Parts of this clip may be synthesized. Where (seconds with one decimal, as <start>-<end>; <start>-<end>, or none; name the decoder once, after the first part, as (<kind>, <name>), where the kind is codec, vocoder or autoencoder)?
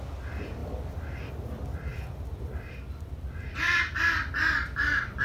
0.6-1.3 (vocoder, BigVGAN v2); 1.9-5.2